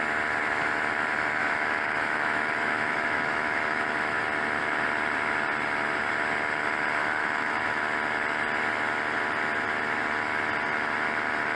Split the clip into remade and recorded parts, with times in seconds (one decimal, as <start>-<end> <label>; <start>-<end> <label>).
0.0-1.4 recorded; 1.4-4.2 remade; 4.2-7.0 recorded; 7.0-7.8 remade; 7.8-11.5 recorded